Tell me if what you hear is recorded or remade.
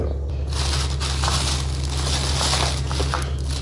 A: recorded